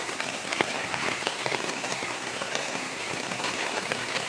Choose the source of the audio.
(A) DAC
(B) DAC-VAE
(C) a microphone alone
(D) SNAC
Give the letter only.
D